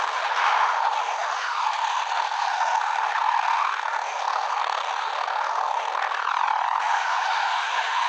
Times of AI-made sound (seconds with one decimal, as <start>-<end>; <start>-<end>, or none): 0.0-6.2; 6.8-8.1